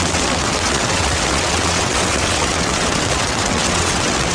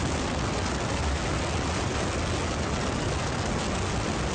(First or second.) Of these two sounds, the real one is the second